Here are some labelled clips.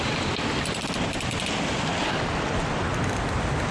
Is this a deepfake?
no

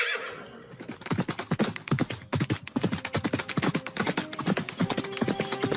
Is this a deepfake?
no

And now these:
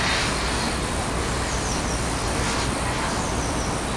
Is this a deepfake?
no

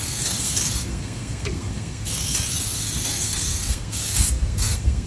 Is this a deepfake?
yes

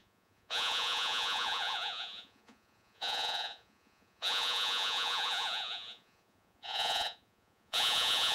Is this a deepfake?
yes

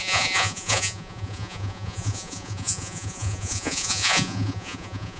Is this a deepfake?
yes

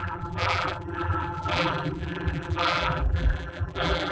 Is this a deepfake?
yes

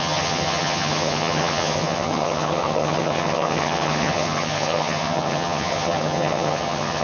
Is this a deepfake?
yes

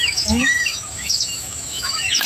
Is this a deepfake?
yes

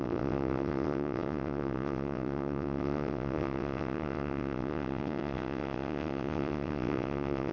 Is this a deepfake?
yes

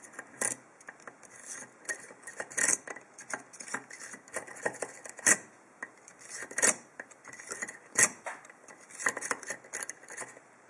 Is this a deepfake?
no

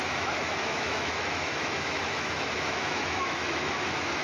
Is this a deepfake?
yes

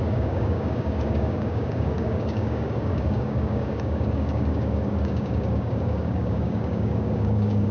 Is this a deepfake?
yes